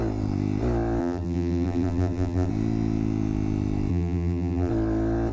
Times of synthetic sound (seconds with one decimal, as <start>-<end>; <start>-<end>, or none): 1.0-2.5; 3.9-4.7